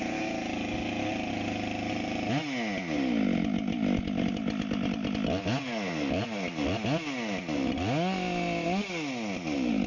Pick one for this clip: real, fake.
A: real